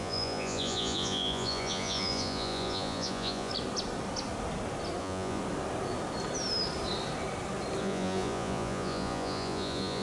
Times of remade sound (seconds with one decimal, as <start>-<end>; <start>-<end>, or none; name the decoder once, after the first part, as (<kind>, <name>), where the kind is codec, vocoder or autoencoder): 0.0-3.5 (vocoder, Vocos); 5.0-5.4; 7.8-10.0